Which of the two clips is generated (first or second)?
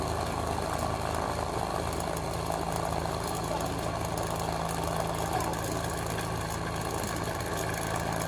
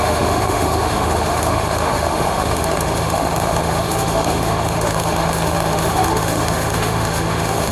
second